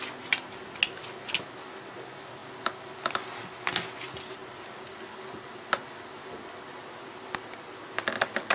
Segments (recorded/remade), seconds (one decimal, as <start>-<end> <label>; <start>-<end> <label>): 0.0-8.5 recorded